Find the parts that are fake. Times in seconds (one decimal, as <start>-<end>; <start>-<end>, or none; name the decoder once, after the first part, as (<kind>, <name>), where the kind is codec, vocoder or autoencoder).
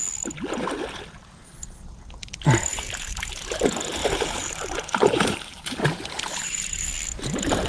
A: 2.7-3.3 (vocoder, BigVGAN v2); 4.0-6.9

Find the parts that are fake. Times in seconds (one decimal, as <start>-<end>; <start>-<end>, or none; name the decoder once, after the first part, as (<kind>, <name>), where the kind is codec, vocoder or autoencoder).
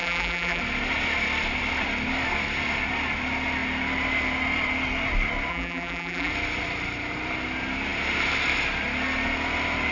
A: 0.0-0.6 (vocoder, BigVGAN v2); 5.5-6.3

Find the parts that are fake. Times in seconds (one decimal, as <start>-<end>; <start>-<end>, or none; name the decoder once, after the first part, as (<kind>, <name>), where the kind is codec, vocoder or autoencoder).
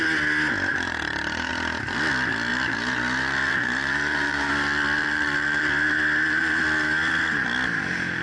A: 0.7-1.5 (vocoder, BigVGAN v2); 2.5-4.5; 5.0-5.7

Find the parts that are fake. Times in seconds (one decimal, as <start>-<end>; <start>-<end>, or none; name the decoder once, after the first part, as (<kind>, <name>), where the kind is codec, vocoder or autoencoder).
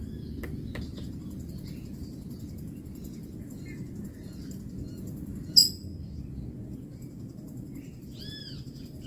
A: 5.6-6.2 (vocoder, BigVGAN v2); 6.9-9.1